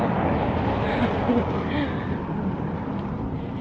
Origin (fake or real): real